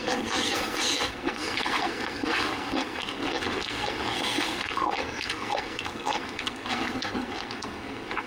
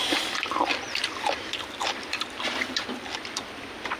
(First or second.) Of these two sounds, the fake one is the first